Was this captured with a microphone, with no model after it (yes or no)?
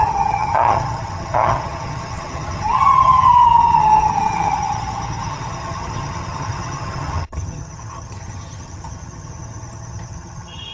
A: no